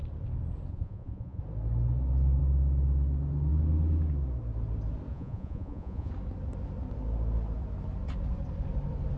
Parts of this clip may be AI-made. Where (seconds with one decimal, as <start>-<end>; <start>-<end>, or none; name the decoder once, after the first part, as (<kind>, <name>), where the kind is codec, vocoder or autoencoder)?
0.7-1.4 (vocoder, Vocos); 5.1-6.1